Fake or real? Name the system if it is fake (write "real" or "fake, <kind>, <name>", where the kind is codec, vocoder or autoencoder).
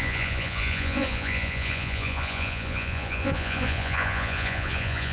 fake, vocoder, Vocos